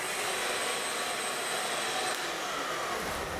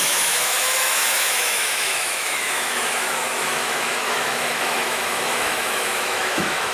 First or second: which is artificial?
second